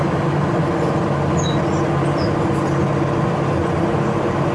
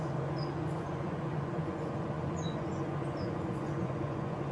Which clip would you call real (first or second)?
first